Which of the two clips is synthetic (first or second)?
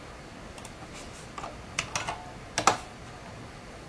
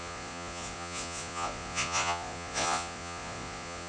second